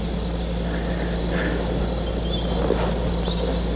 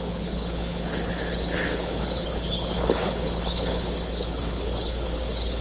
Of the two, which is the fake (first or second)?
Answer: second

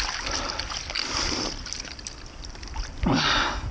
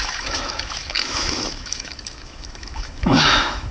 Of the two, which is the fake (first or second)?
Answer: second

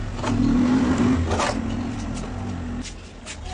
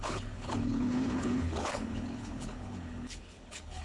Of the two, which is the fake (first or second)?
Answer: second